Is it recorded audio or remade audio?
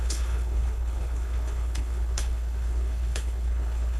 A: remade